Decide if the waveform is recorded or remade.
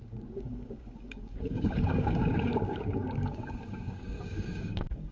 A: remade